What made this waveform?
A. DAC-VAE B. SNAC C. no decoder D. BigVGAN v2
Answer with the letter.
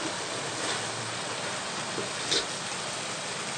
C